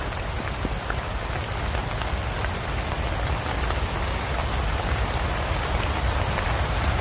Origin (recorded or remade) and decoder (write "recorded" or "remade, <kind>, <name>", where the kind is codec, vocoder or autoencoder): recorded